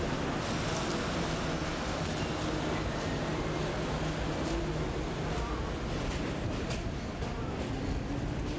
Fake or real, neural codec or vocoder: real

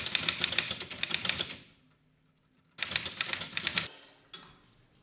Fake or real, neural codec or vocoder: real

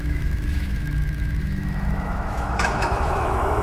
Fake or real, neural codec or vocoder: fake, autoencoder, DAC-VAE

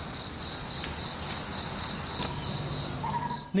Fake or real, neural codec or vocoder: real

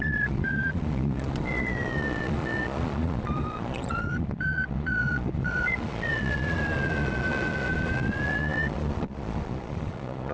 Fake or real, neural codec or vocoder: fake, vocoder, Vocos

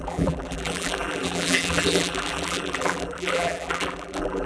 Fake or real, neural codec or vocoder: fake, vocoder, BigVGAN v2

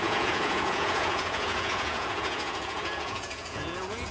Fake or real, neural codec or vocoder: fake, vocoder, Vocos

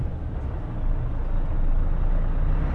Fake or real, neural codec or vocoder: real